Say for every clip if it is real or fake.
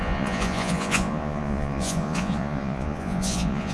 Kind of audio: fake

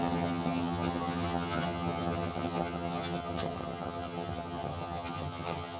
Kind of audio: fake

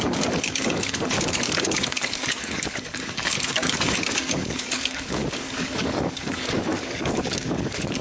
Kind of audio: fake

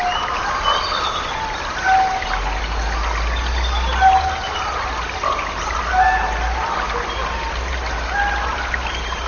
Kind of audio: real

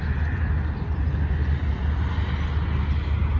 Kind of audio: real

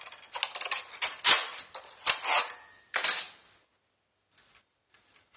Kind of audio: real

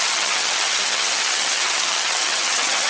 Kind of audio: fake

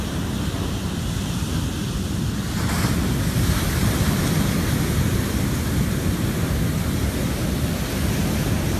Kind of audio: real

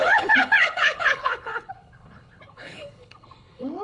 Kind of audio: fake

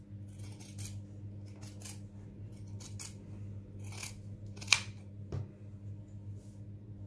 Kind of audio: real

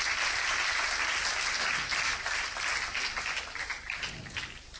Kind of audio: real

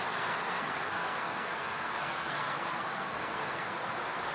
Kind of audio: fake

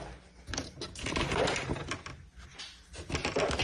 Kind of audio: real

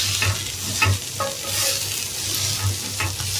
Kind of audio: real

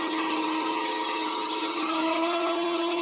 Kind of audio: fake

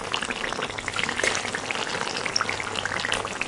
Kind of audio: real